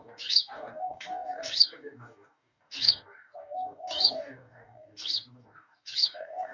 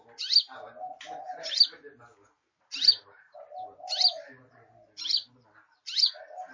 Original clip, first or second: second